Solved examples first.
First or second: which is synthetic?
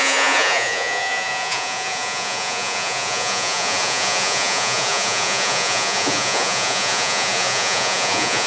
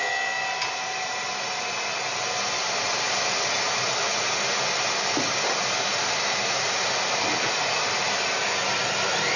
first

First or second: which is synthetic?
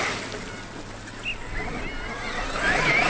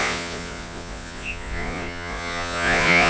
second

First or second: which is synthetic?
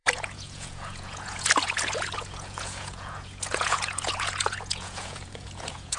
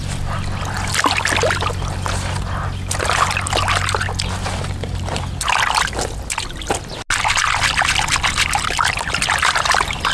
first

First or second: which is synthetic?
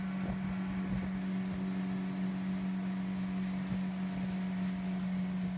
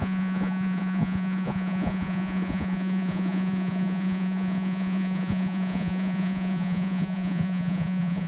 second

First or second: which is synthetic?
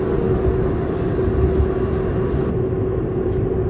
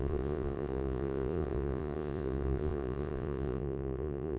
second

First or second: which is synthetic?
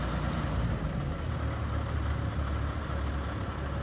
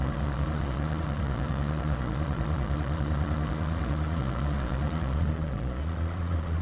second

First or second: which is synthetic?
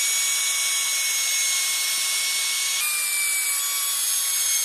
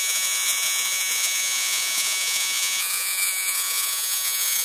second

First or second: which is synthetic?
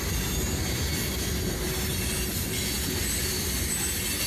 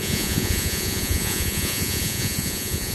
second